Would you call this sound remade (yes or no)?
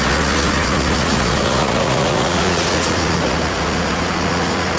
yes